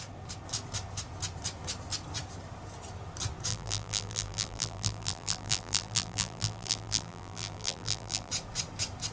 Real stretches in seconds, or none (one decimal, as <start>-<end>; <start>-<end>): 0.0-3.5; 8.3-9.1